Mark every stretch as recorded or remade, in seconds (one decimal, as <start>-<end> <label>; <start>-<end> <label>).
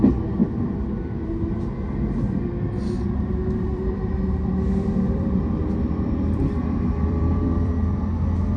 0.0-0.4 recorded; 0.4-1.3 remade; 1.3-3.7 recorded; 3.7-7.9 remade; 7.9-8.6 recorded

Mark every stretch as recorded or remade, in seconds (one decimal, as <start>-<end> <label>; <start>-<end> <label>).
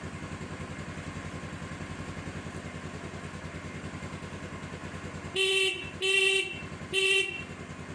0.0-7.9 recorded